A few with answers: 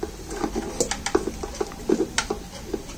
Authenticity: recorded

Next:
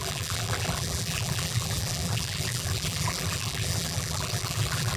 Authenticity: remade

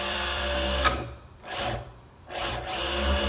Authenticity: remade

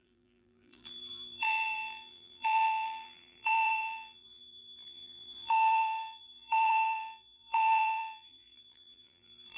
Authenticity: remade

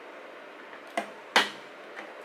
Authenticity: recorded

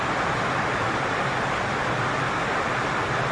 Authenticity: recorded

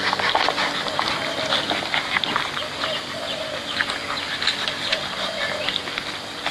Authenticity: recorded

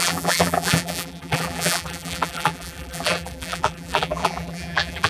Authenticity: remade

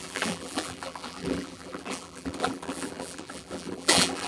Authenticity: remade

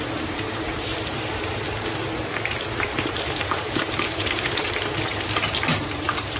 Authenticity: remade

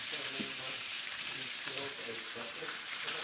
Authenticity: remade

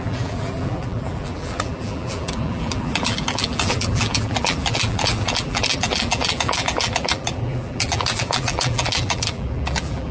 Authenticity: remade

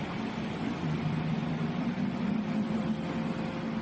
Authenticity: remade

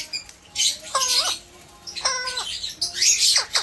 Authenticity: recorded